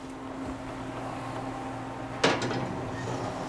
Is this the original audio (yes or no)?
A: yes